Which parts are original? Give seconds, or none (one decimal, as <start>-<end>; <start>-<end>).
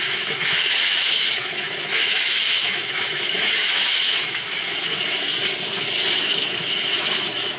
5.3-6.2